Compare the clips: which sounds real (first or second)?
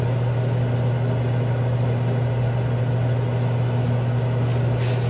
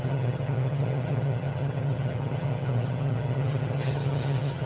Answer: first